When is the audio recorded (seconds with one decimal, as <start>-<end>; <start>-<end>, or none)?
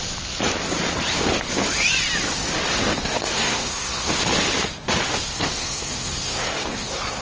0.0-3.0; 4.1-5.3